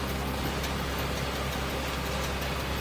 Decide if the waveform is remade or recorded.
recorded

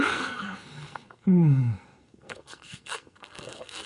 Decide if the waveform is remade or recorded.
remade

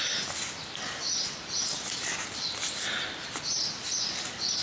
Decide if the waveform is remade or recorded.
recorded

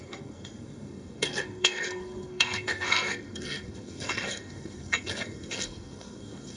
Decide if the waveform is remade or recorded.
remade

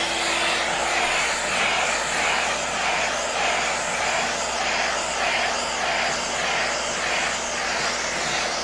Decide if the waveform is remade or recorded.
recorded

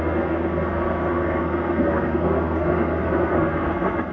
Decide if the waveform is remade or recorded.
remade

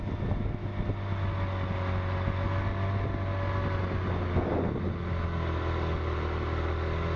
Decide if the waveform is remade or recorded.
recorded